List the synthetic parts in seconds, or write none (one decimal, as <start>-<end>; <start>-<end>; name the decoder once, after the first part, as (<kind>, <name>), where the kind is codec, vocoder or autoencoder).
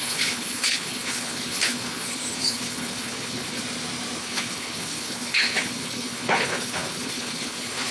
0.0-3.6 (codec, HILCodec); 4.2-7.9